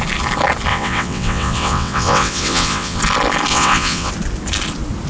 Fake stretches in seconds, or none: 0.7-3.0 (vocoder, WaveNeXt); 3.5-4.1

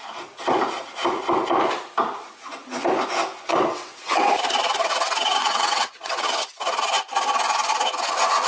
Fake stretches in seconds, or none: 3.5-4.3 (vocoder, WaveNeXt); 5.4-6.3

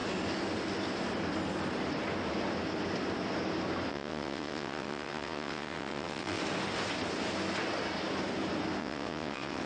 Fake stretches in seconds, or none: 3.9-6.4 (vocoder, WaveNeXt); 8.8-9.7

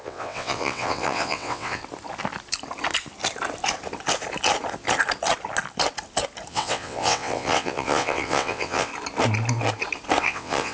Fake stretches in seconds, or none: 0.0-1.8 (vocoder, WaveNeXt); 6.5-8.9; 10.2-10.7

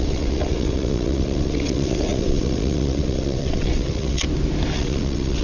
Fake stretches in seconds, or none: 0.0-4.2 (vocoder, WaveNeXt); 4.7-5.4

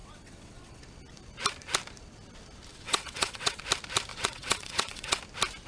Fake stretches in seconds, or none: 0.0-0.8 (vocoder, WaveNeXt); 2.7-3.6; 4.1-5.2